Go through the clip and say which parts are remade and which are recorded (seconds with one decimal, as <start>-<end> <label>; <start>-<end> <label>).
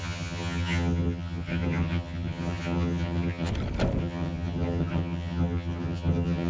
0.0-3.5 remade; 3.5-4.0 recorded; 4.0-6.5 remade